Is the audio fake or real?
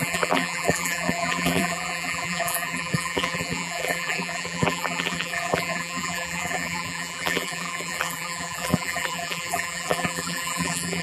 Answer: fake